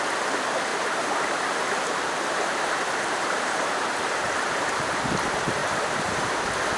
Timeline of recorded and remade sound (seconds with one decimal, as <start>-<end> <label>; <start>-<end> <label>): 0.0-0.7 recorded; 0.7-4.8 remade; 4.8-5.6 recorded; 5.6-6.2 remade; 6.2-6.8 recorded